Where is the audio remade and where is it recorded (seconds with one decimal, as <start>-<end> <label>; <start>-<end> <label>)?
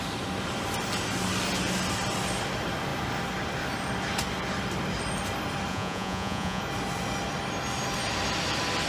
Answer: 0.0-5.7 recorded; 5.7-6.6 remade; 6.6-8.9 recorded